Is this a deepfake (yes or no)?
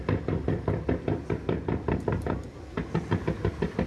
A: no